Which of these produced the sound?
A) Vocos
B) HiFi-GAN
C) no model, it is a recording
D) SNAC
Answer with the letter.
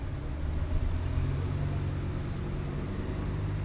C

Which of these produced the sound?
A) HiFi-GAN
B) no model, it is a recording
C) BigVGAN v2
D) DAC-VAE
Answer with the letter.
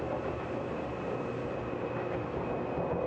B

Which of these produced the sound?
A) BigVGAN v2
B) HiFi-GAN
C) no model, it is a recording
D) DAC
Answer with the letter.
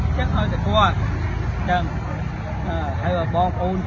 C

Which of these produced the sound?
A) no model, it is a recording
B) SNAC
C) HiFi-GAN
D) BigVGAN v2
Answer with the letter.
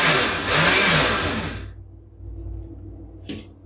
A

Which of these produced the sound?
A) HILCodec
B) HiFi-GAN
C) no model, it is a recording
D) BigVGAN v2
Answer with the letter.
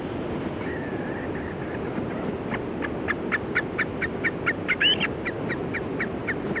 C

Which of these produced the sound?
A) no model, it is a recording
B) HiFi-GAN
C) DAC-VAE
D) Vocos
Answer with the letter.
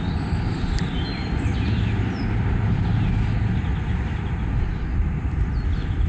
A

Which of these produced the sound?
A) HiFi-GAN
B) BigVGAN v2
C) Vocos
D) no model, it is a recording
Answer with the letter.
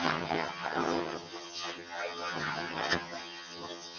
A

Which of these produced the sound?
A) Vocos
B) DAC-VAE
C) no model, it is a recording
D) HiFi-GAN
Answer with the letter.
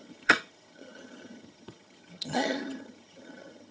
D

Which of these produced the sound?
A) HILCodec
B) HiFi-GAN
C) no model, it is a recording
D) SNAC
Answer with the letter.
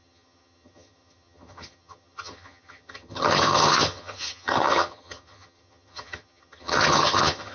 B